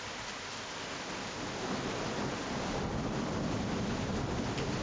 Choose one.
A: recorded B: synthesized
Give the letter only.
A